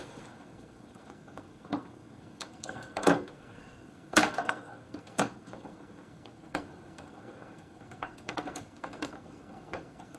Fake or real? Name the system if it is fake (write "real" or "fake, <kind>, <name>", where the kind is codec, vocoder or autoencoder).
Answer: fake, codec, SNAC